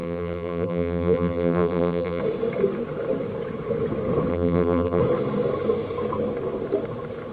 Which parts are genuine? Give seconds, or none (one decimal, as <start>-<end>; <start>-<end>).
2.2-4.3; 5.0-7.3